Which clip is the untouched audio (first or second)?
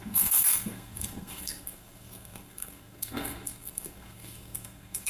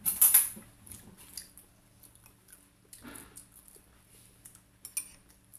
second